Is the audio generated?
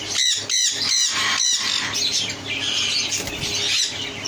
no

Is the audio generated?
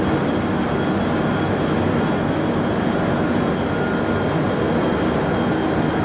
no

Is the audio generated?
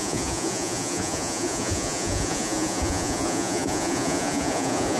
yes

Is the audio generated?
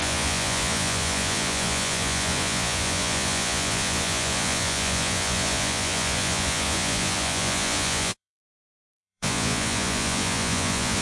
yes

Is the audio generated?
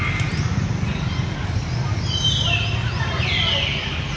no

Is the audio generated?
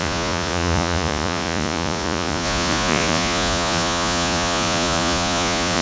yes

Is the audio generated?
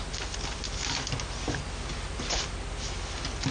no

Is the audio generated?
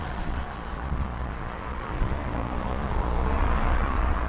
yes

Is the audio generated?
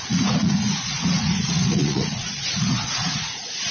yes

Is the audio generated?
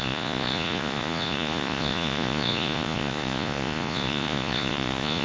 yes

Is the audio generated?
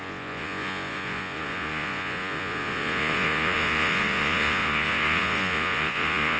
yes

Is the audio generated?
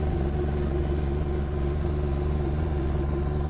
yes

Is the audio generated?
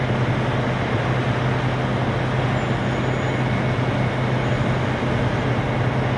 no